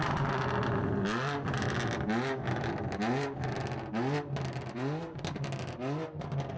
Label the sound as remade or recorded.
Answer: recorded